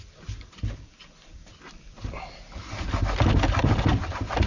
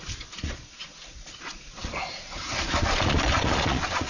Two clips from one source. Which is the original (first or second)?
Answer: first